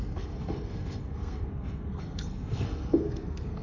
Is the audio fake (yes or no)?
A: yes